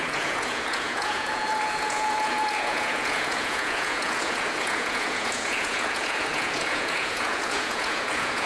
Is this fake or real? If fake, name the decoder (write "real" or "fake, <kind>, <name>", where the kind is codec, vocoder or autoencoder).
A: fake, vocoder, Vocos